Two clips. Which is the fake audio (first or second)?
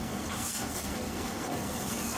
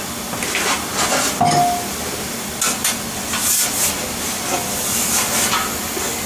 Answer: first